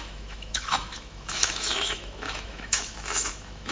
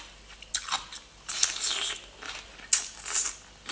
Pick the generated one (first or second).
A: first